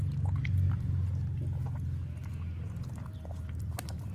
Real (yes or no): yes